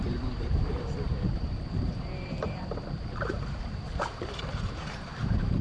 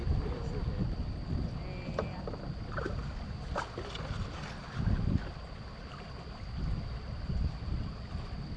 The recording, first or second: second